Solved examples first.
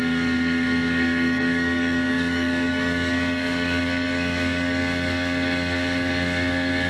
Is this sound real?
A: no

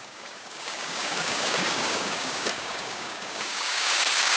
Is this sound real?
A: no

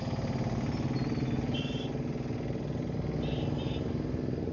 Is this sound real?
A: yes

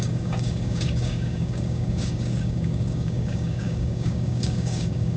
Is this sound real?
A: no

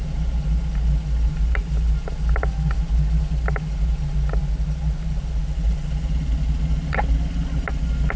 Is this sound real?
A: yes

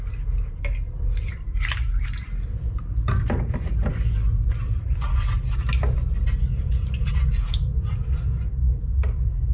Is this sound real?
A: yes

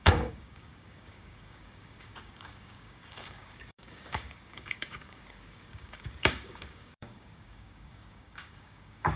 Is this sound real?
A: no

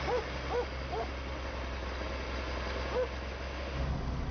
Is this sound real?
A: yes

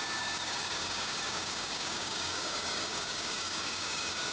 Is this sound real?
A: no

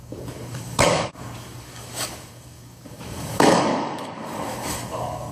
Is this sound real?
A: no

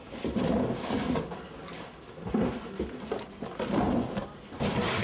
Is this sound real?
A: yes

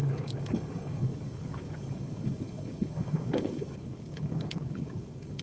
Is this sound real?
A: no